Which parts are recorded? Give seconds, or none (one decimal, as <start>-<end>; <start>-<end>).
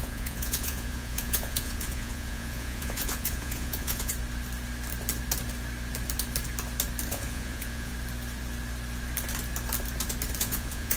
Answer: 4.1-7.1; 7.9-10.4